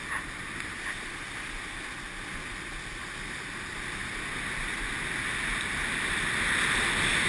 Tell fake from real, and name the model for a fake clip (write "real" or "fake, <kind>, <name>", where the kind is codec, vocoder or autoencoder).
real